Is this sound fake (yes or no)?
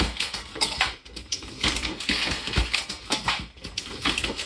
yes